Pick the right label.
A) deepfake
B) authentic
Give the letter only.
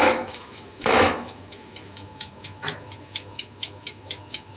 A